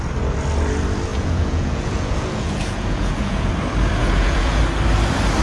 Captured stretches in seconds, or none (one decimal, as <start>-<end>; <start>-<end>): 0.0-1.1; 3.5-4.0; 4.6-5.4